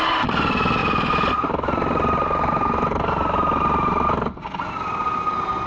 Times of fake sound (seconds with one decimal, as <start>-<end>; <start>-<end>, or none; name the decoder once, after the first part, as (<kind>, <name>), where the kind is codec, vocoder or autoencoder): none